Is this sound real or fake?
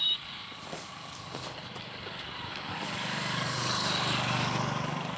fake